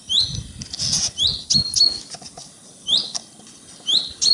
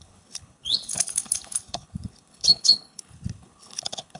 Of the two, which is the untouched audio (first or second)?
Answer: first